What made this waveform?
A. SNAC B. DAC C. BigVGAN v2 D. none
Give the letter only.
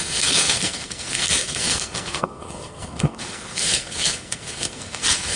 A